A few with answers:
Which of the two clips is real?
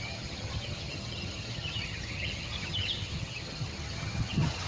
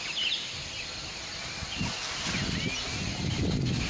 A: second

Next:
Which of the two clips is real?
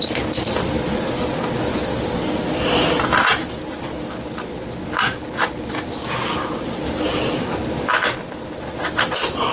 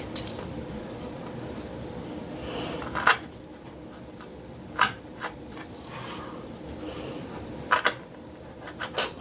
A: first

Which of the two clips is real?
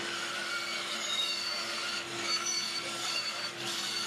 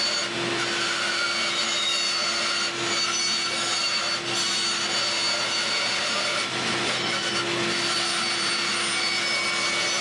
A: second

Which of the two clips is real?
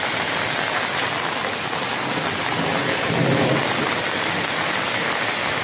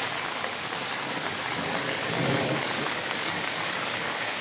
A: first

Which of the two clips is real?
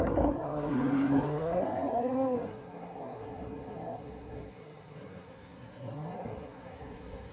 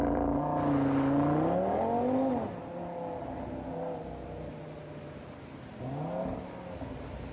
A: second